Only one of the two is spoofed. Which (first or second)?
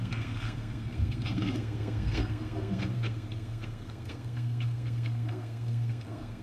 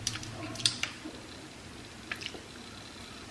first